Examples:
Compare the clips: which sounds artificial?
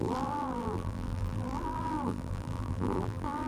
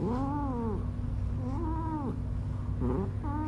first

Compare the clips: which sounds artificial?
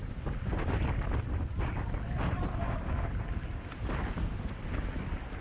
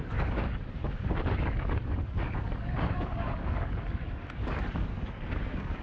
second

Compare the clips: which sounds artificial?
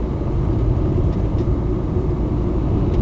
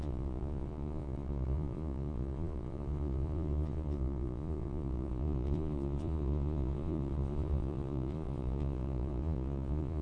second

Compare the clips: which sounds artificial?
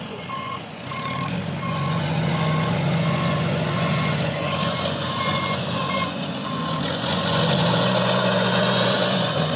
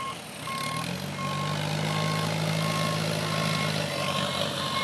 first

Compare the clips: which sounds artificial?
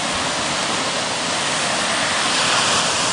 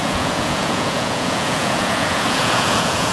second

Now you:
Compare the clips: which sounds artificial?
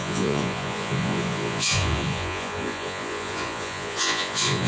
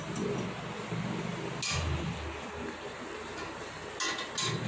first